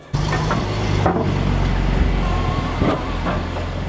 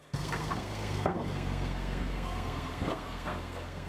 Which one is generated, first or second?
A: second